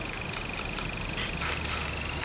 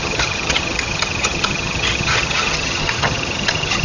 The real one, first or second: first